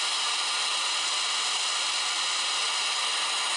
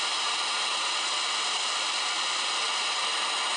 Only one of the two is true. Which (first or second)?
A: first